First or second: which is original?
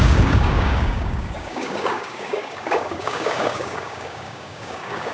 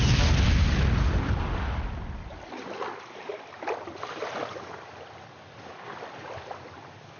second